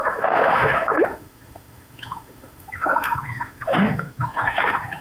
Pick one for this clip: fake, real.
fake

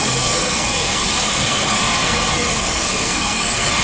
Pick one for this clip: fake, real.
fake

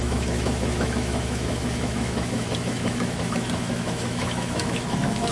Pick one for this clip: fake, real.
fake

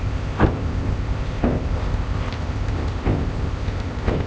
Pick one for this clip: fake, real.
fake